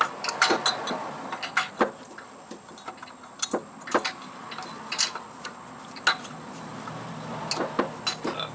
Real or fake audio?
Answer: real